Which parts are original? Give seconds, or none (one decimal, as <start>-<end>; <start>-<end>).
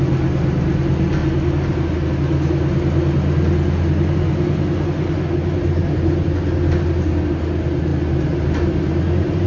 0.0-9.5